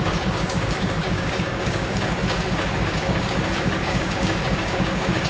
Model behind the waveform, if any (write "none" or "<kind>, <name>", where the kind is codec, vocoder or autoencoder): codec, DAC